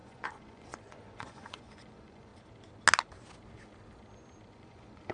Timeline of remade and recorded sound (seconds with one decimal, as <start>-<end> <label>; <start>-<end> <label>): 0.0-2.3 remade; 2.3-4.5 recorded; 4.5-5.1 remade